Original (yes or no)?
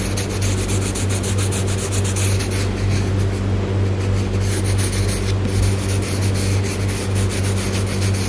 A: yes